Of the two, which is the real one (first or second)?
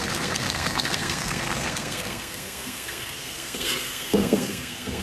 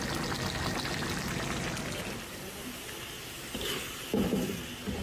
second